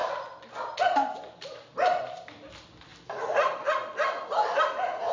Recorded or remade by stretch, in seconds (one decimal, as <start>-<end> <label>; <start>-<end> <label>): 0.0-0.8 remade; 0.8-2.9 recorded; 2.9-3.6 remade; 3.6-5.1 recorded